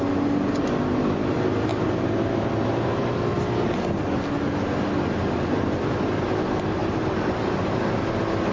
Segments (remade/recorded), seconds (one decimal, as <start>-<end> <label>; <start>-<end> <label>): 0.0-1.7 recorded; 1.7-3.3 remade; 3.3-6.8 recorded; 6.8-7.8 remade; 7.8-8.5 recorded